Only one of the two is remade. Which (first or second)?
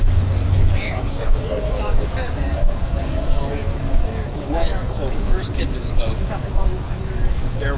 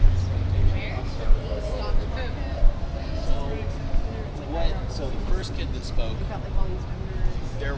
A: first